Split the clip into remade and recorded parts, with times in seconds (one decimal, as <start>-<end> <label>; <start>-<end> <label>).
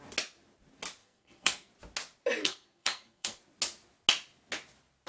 0.0-1.0 recorded; 1.0-1.7 remade; 1.7-2.4 recorded; 2.4-3.4 remade; 3.4-5.1 recorded